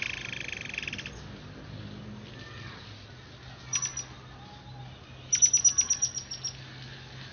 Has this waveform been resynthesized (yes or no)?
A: no